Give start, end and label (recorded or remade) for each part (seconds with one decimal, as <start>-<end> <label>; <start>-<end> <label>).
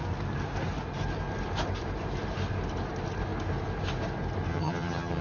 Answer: 0.0-4.5 recorded; 4.5-5.2 remade